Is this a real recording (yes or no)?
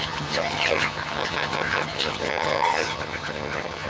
no